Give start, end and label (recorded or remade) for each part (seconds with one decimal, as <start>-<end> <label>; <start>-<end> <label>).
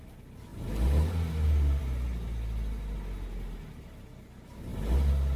0.0-5.4 recorded